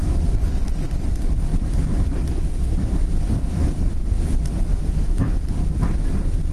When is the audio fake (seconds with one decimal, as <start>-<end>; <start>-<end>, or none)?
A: 4.8-5.4